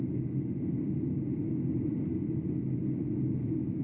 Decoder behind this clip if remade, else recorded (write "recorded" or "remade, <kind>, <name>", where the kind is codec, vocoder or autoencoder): recorded